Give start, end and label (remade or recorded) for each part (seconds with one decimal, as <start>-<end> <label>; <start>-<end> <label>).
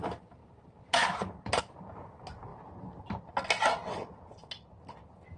0.0-0.4 recorded; 0.4-1.6 remade; 1.6-2.5 recorded; 2.5-3.3 remade; 3.3-5.4 recorded